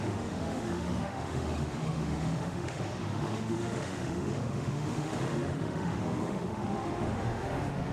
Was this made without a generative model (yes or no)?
no